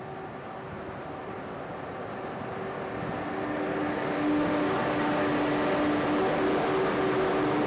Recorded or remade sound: recorded